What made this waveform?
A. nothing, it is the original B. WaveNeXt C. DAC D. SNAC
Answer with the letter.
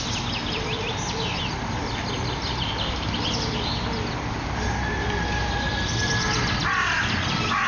A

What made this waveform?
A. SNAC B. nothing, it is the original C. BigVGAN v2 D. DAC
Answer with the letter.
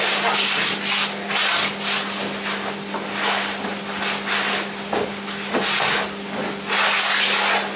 B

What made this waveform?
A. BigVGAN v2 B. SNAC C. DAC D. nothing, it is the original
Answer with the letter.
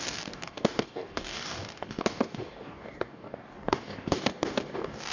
C